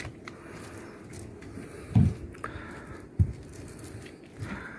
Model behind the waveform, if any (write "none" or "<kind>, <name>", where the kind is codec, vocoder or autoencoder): none